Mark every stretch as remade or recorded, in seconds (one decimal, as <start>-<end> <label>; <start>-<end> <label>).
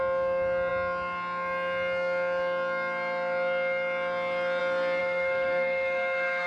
0.0-5.0 recorded; 5.0-6.5 remade